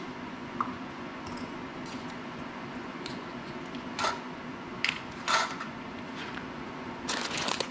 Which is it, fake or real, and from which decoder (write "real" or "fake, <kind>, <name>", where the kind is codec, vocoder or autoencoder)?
fake, vocoder, Vocos